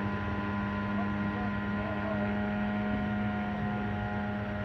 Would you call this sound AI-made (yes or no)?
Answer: no